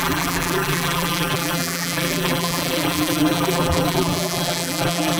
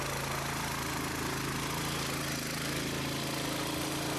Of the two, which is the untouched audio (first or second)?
second